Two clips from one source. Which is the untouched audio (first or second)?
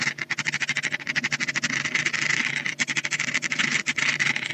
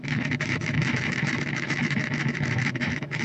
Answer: first